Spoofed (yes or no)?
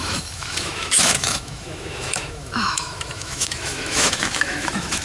yes